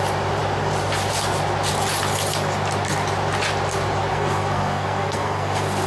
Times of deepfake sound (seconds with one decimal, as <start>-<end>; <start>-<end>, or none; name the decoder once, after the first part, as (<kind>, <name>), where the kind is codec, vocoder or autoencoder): 4.1-5.9 (codec, SNAC)